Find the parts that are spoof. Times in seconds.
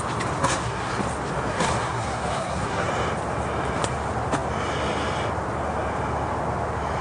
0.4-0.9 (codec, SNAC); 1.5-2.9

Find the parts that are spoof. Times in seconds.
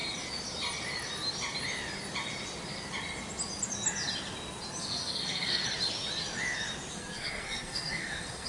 4.8-5.6 (codec, SNAC); 6.9-8.5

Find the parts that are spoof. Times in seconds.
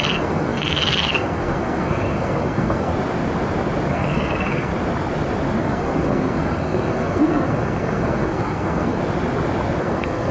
0.0-2.9 (codec, SNAC); 3.9-4.7; 5.6-9.0; 9.8-10.3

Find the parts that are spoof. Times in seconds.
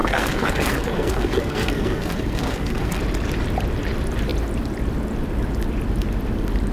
0.0-3.0 (codec, SNAC)